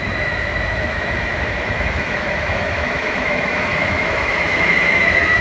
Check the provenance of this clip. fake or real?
fake